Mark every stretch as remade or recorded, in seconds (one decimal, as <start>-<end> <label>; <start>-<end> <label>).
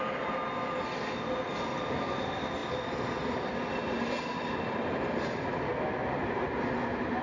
0.0-7.2 recorded